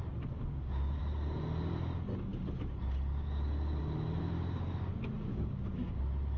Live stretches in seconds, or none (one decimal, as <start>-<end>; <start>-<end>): 0.0-0.5; 1.0-5.3; 6.0-6.4